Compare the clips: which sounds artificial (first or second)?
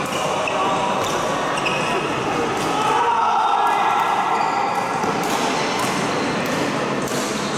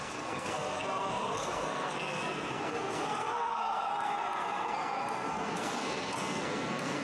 second